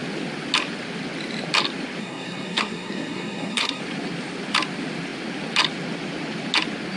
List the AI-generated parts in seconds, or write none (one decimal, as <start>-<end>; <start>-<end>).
2.0-3.8